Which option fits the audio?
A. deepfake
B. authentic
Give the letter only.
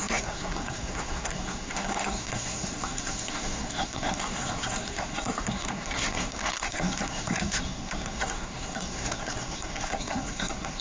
A